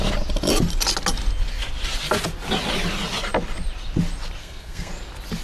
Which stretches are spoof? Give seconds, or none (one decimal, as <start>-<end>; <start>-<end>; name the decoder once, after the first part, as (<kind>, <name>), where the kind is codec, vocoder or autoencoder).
4.4-4.9 (codec, SNAC)